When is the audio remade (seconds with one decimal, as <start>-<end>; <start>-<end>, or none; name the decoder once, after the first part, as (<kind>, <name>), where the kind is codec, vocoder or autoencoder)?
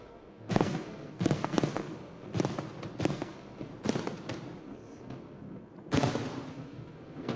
0.0-2.3 (codec, SNAC); 3.1-3.7; 4.6-5.7; 6.5-7.4